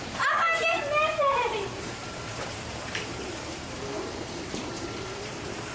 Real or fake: fake